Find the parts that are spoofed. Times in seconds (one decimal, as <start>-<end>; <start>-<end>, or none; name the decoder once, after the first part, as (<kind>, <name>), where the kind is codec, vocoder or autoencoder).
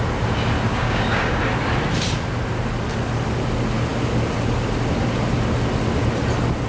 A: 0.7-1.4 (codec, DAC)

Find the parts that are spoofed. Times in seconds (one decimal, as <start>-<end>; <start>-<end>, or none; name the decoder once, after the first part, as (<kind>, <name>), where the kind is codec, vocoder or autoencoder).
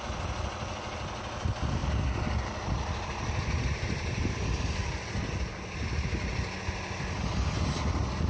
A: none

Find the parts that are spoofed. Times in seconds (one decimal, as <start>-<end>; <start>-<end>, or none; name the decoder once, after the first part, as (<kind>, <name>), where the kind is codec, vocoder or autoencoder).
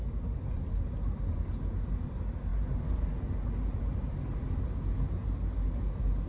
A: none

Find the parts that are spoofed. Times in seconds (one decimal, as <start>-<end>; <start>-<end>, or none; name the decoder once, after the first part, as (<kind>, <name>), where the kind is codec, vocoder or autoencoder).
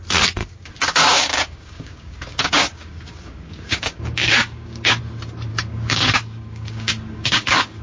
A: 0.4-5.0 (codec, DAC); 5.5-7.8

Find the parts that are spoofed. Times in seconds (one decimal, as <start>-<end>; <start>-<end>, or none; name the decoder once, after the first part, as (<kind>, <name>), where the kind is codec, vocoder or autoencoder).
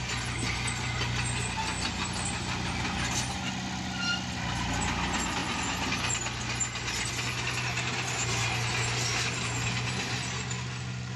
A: none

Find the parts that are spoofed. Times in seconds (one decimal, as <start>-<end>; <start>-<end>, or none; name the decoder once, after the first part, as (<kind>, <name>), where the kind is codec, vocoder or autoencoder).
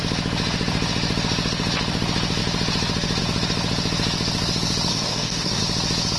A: 4.9-5.6 (codec, DAC)